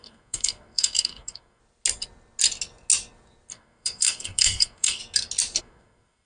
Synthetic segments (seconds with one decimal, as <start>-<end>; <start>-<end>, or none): 0.0-1.6; 3.5-5.0; 5.6-6.3